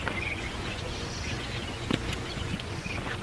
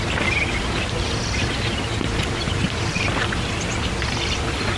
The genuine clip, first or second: second